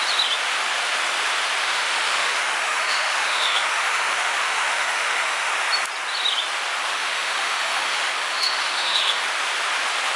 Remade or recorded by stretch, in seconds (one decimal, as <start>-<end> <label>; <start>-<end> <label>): 0.0-1.6 recorded; 1.6-5.5 remade; 5.5-6.9 recorded; 6.9-9.2 remade; 9.2-10.2 recorded